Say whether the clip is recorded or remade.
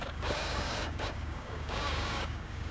remade